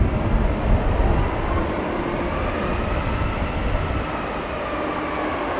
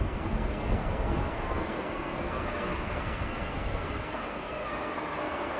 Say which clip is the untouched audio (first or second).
first